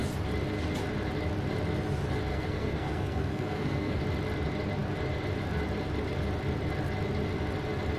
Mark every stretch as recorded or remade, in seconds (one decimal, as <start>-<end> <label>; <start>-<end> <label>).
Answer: 0.0-2.3 recorded; 2.3-4.0 remade; 4.0-8.0 recorded